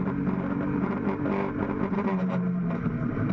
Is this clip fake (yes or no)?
yes